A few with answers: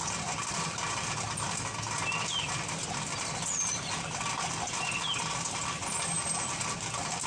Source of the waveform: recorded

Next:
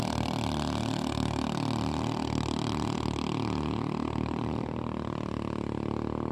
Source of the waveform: recorded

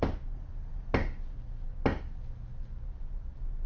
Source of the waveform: recorded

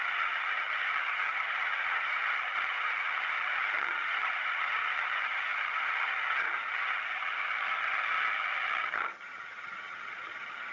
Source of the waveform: remade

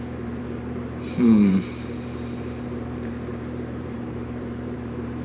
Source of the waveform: remade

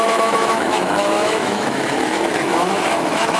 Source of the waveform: remade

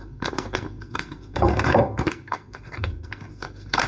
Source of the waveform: remade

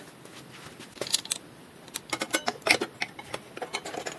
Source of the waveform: recorded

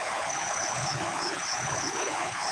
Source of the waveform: remade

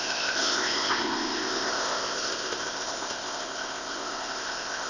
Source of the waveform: remade